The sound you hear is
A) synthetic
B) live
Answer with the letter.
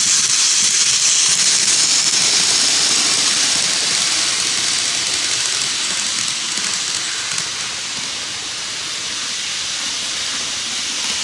B